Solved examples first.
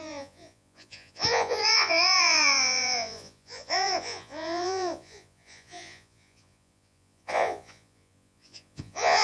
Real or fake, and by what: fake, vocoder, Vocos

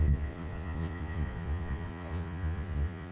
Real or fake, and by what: fake, vocoder, Vocos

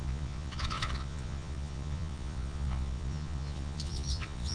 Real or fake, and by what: fake, vocoder, Vocos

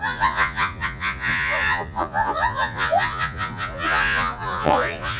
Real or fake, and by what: fake, vocoder, Vocos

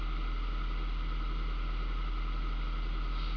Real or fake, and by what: real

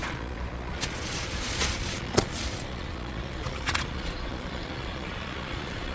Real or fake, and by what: fake, vocoder, Vocos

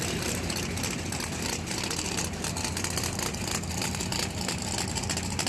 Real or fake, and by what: real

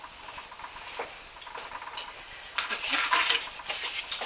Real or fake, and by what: real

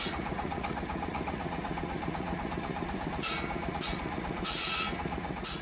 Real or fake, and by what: fake, vocoder, Vocos